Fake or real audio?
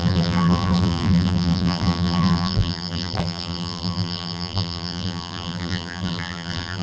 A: fake